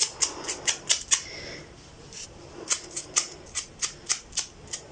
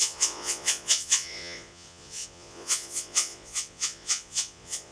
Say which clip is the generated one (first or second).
second